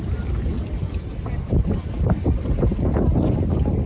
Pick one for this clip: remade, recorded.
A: remade